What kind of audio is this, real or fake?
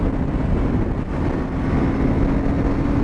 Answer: real